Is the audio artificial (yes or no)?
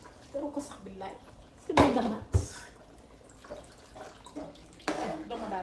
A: no